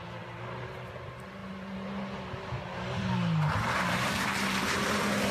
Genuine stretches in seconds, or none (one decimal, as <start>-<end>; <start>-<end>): 0.0-5.3